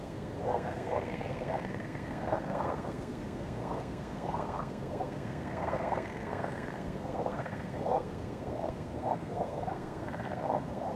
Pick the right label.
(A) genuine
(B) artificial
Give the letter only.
B